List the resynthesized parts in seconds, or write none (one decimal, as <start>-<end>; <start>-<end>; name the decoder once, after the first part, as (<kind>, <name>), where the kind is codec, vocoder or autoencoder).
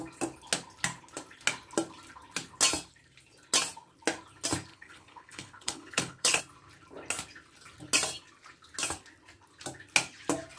4.7-6.4 (codec, HILCodec)